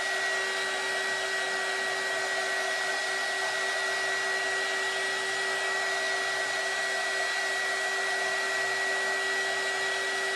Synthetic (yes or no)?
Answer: no